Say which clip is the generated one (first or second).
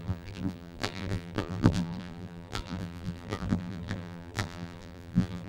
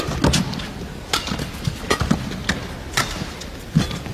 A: first